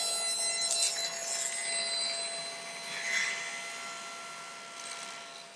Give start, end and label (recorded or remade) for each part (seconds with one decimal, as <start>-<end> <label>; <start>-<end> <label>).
0.0-5.6 recorded